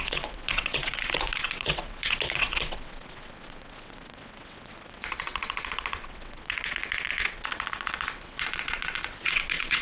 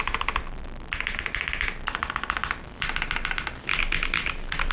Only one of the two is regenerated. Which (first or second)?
first